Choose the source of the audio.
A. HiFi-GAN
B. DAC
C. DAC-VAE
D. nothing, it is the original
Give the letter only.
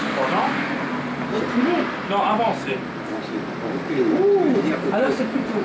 D